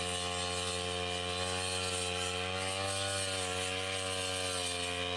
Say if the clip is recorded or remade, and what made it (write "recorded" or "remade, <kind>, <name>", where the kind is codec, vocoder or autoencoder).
recorded